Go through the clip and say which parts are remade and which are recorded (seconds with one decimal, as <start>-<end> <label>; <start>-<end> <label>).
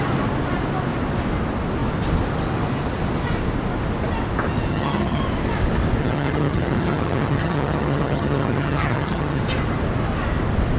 0.0-4.7 recorded; 4.7-5.2 remade; 5.2-6.0 recorded; 6.0-9.4 remade; 9.4-10.8 recorded